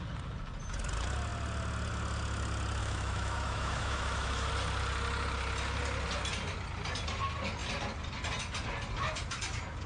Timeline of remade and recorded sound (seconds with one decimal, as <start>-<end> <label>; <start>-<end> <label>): 0.0-2.8 recorded; 2.8-4.5 remade; 4.5-9.9 recorded

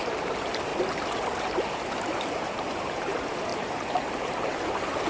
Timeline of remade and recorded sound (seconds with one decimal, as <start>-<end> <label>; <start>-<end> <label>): 0.0-0.7 remade; 0.7-1.4 recorded; 1.4-3.5 remade; 3.5-4.2 recorded; 4.2-5.1 remade

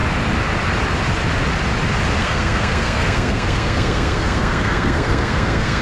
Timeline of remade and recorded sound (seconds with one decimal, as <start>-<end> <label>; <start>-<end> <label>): 0.0-2.2 recorded; 2.2-5.8 remade

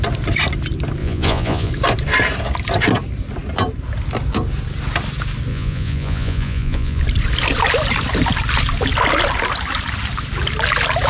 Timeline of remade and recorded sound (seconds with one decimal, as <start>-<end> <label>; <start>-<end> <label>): 0.0-1.0 recorded; 1.0-1.7 remade; 1.7-5.5 recorded; 5.5-7.0 remade; 7.0-11.1 recorded

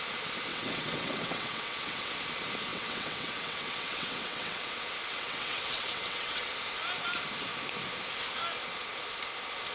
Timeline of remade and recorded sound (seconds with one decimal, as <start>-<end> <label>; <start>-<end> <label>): 0.0-0.5 recorded; 0.5-2.1 remade; 2.1-2.7 recorded; 2.7-4.6 remade; 4.6-5.1 recorded; 5.1-6.5 remade; 6.5-9.7 recorded

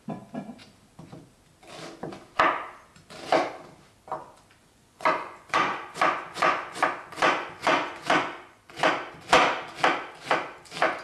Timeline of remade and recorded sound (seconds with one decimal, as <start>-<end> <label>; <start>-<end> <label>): 0.0-4.6 recorded; 4.6-8.9 remade; 8.9-11.0 recorded